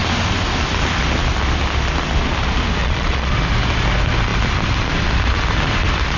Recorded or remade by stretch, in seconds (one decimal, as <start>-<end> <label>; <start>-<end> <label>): 0.0-2.8 recorded; 2.8-3.3 remade; 3.3-6.2 recorded